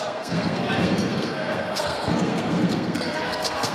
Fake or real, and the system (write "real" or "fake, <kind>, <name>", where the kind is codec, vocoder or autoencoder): fake, codec, SNAC